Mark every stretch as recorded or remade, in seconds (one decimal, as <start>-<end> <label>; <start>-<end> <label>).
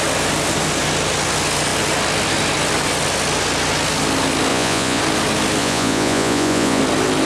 0.0-4.5 recorded; 4.5-5.0 remade; 5.0-5.6 recorded; 5.6-6.8 remade; 6.8-7.2 recorded